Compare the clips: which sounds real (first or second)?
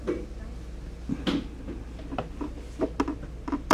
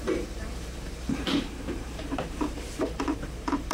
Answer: first